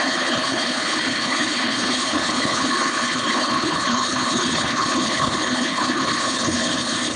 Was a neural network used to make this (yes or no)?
yes